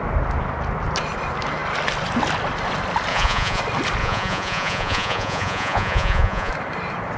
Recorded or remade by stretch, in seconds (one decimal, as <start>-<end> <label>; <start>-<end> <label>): 0.0-3.1 recorded; 3.1-3.6 remade; 3.6-4.0 recorded; 4.0-6.5 remade; 6.5-7.2 recorded

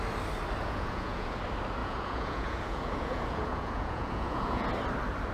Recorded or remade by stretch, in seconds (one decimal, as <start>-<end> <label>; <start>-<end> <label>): 0.0-0.6 recorded; 0.6-1.4 remade; 1.4-1.8 recorded; 1.8-4.7 remade; 4.7-5.3 recorded

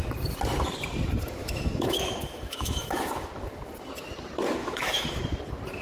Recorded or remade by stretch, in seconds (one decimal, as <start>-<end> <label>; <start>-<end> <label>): 0.0-1.4 recorded; 1.4-3.3 remade; 3.3-4.6 recorded; 4.6-5.2 remade; 5.2-5.8 recorded

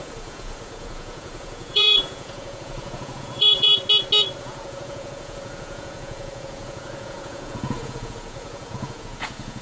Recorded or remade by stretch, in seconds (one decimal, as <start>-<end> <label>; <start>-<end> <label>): 0.0-3.7 remade; 3.7-4.4 recorded; 4.4-9.6 remade

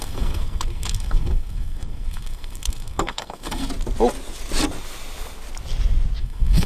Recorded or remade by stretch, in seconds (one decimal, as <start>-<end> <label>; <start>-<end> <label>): 0.0-3.7 remade; 3.7-6.2 recorded; 6.2-6.7 remade

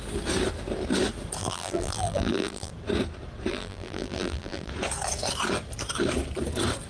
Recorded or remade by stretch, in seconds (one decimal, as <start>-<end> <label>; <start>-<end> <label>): 0.0-1.4 recorded; 1.4-2.7 remade; 2.7-3.5 recorded; 3.5-4.7 remade; 4.7-6.9 recorded